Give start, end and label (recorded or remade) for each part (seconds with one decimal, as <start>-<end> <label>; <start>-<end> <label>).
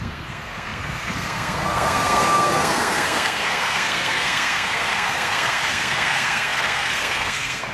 0.0-7.7 remade